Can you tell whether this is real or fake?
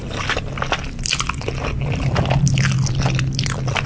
real